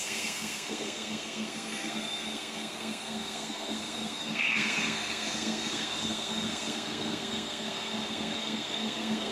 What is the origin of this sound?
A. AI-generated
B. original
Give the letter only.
A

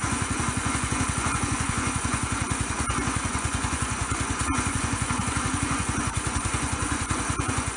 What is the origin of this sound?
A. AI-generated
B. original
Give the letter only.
A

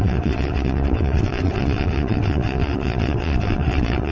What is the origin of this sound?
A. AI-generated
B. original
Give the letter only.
A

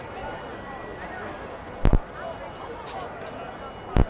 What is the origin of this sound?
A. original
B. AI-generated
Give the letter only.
A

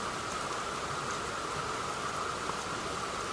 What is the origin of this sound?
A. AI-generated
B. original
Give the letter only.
B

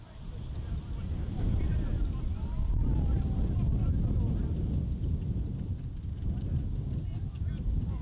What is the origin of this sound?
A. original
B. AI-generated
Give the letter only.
A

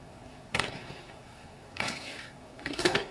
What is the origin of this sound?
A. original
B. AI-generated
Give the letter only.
B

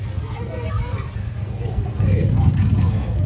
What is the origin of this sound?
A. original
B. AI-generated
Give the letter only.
B